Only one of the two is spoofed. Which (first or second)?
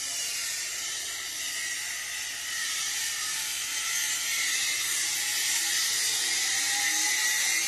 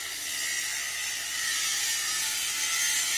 first